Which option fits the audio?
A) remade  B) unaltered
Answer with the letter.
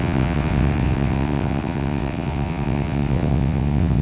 A